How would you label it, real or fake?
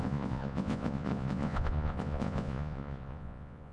fake